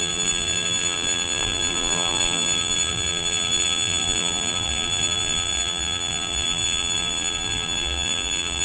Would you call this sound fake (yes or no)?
yes